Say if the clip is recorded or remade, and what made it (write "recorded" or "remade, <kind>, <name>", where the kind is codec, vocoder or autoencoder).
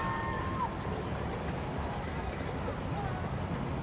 recorded